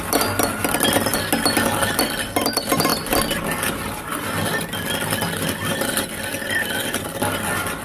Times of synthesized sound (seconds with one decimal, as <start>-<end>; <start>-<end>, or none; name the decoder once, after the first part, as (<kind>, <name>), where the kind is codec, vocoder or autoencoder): none